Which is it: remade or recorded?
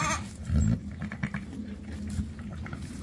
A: recorded